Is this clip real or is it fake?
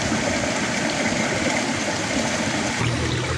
real